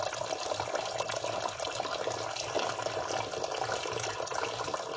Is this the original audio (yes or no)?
yes